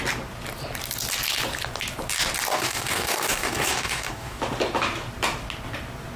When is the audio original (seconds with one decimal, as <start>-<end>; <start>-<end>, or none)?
0.0-2.5; 4.4-6.2